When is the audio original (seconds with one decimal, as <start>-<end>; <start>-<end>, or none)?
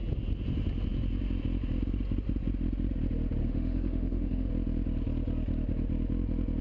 0.0-3.4; 4.5-6.6